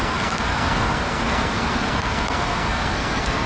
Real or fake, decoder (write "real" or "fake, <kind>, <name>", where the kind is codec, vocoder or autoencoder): fake, codec, SNAC